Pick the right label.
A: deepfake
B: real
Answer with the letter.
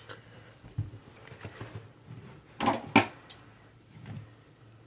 B